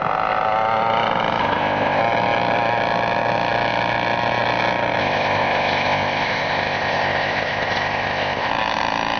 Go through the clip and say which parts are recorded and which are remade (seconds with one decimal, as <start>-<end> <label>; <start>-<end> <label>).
0.0-1.4 recorded; 1.4-2.0 remade; 2.0-5.0 recorded; 5.0-8.5 remade; 8.5-9.2 recorded